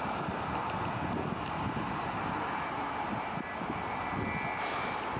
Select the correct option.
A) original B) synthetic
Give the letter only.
A